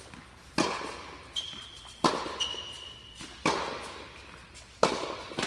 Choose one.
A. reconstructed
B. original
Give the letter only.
B